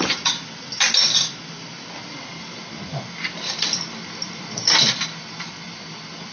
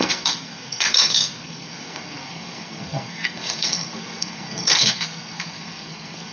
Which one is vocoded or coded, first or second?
second